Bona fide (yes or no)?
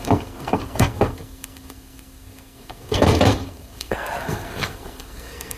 no